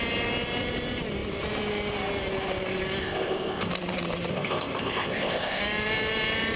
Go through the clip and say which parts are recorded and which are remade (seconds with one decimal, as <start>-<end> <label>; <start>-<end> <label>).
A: 0.0-3.0 recorded; 3.0-3.7 remade; 3.7-4.3 recorded; 4.3-5.6 remade; 5.6-6.6 recorded